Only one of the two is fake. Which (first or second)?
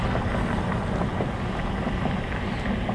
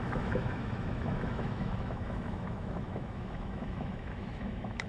second